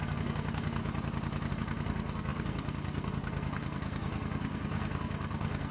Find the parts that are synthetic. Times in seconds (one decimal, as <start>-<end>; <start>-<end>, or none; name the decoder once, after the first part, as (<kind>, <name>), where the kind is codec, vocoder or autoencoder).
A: 0.0-0.8 (codec, SNAC); 1.5-5.7